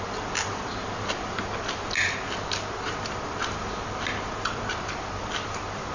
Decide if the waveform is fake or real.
real